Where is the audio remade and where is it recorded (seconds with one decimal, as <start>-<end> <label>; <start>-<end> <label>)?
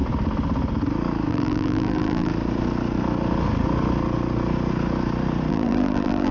0.0-1.3 recorded; 1.3-2.3 remade; 2.3-5.5 recorded; 5.5-6.3 remade